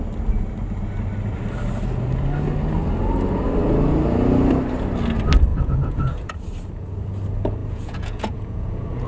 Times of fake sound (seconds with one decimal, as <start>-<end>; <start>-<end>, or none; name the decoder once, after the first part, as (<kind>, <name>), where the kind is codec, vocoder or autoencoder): 5.5-6.4 (vocoder, Vocos); 7.6-9.1